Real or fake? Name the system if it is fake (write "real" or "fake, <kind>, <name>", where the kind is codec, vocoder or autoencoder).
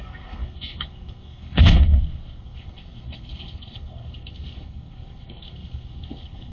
fake, codec, SNAC